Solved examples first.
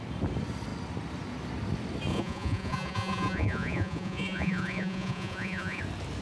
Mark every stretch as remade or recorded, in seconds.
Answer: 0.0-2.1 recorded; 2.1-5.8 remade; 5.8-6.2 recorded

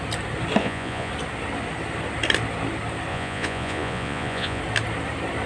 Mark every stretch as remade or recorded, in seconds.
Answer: 0.0-0.6 recorded; 0.6-1.1 remade; 1.1-3.1 recorded; 3.1-4.6 remade; 4.6-5.5 recorded

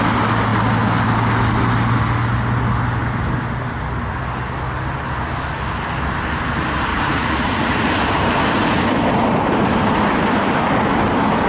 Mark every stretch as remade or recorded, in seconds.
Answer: 0.0-6.9 recorded; 6.9-7.9 remade; 7.9-11.5 recorded

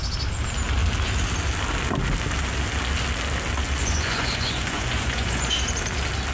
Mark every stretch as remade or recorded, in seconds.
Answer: 0.0-3.8 recorded; 3.8-5.5 remade; 5.5-6.3 recorded

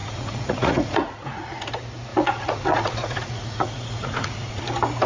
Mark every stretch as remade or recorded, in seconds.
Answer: 0.0-1.7 remade; 1.7-2.1 recorded; 2.1-4.6 remade; 4.6-5.1 recorded

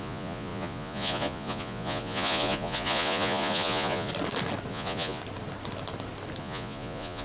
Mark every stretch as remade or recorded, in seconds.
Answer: 0.0-4.1 remade; 4.1-4.7 recorded; 4.7-5.2 remade; 5.2-6.4 recorded; 6.4-7.2 remade

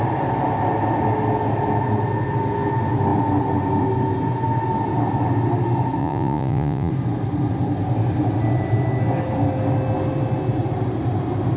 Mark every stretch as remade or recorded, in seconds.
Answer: 0.0-6.0 recorded; 6.0-6.9 remade; 6.9-11.6 recorded

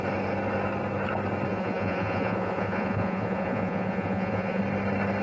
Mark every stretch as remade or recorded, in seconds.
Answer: 0.0-1.5 recorded; 1.5-4.6 remade; 4.6-5.2 recorded